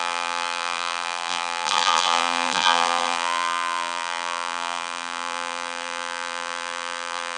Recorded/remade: remade